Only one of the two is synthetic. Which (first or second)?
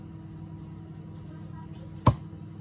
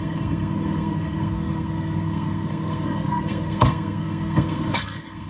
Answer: second